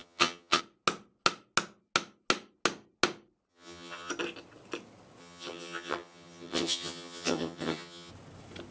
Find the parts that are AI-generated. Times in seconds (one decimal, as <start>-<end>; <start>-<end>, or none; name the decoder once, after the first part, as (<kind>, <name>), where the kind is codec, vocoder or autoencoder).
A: 0.0-0.6 (vocoder, HiFi-GAN); 3.5-4.1; 5.2-8.1